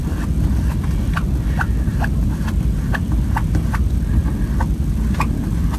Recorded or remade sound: recorded